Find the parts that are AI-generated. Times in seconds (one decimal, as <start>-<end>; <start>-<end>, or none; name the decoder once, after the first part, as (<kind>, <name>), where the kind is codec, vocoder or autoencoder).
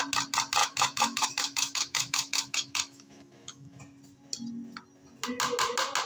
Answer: 0.6-3.8 (autoencoder, DAC-VAE)